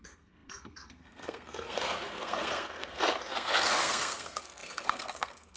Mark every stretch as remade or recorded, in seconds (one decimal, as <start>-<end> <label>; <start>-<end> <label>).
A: 0.0-5.6 remade